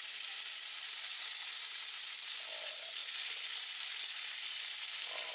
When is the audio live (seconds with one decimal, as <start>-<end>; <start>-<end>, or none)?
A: 3.0-5.3

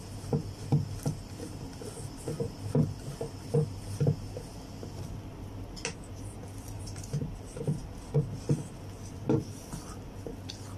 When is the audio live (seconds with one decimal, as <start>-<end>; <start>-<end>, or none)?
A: 0.0-10.8

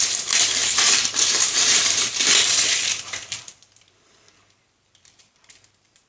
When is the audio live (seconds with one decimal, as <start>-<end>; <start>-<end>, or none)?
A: none

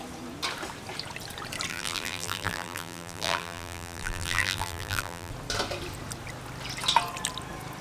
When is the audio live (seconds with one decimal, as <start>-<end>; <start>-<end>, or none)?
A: 0.0-1.7; 5.3-7.8